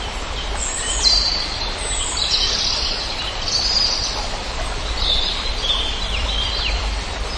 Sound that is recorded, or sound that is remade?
remade